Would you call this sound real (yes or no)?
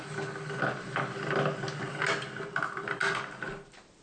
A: yes